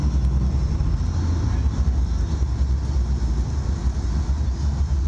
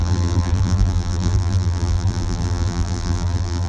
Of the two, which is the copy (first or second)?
second